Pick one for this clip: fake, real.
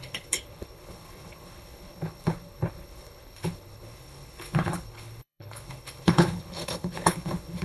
fake